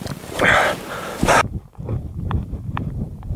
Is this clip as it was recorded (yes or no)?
no